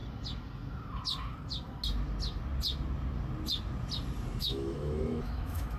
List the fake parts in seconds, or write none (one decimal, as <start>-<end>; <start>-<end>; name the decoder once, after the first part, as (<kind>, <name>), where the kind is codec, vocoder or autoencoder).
4.4-5.8 (autoencoder, DAC-VAE)